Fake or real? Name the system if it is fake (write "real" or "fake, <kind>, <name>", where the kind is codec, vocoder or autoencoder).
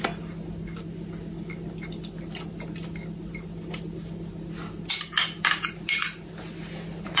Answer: real